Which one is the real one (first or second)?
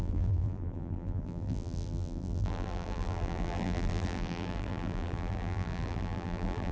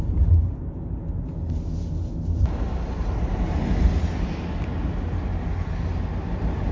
second